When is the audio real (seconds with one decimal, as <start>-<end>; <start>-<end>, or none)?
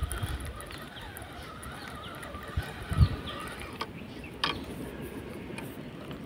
0.0-6.3